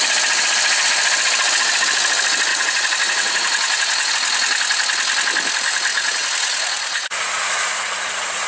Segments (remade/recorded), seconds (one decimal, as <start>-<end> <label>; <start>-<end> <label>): 0.0-2.5 recorded; 2.5-4.1 remade; 4.1-5.9 recorded; 5.9-8.5 remade

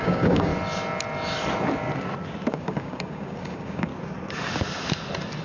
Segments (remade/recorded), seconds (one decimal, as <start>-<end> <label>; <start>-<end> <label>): 0.0-0.5 remade; 0.5-2.5 recorded; 2.5-3.9 remade; 3.9-5.4 recorded

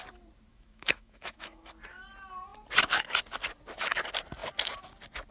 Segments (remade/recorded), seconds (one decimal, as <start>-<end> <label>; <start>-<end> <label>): 0.0-0.5 recorded; 0.5-1.7 remade; 1.7-5.3 recorded

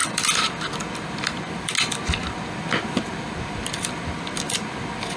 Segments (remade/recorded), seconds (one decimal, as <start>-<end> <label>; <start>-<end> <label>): 0.0-1.7 remade; 1.7-2.2 recorded; 2.2-5.2 remade

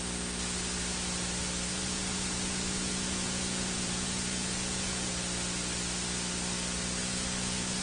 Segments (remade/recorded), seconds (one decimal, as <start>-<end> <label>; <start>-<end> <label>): 0.0-1.7 recorded; 1.7-5.1 remade; 5.1-7.0 recorded; 7.0-7.8 remade

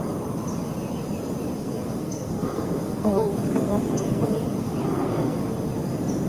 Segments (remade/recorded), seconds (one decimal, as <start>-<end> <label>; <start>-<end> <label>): 0.0-1.6 recorded; 1.6-5.4 remade; 5.4-6.3 recorded